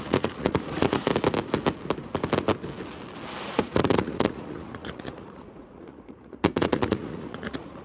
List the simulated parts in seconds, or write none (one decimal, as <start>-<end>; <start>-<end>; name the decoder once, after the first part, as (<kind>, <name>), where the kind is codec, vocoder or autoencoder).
0.0-1.1 (vocoder, Vocos); 3.4-7.8

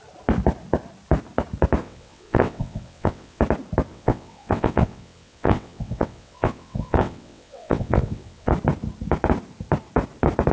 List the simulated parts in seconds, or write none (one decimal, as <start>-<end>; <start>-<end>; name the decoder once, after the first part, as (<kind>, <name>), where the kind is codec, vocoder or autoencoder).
1.8-3.4 (vocoder, WaveNeXt); 3.9-8.5

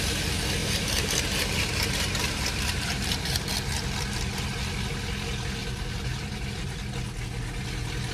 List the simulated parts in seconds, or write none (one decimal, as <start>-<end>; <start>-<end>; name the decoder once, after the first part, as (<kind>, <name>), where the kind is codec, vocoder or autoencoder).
0.6-4.6 (vocoder, BigVGAN v2); 5.6-7.0

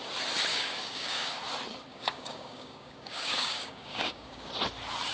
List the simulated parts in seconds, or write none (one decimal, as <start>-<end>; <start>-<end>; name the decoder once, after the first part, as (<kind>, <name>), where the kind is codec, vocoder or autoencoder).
0.5-1.4 (codec, DAC); 1.9-4.5